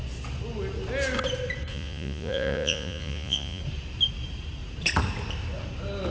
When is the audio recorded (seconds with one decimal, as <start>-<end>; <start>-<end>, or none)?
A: 0.0-1.7; 3.6-6.1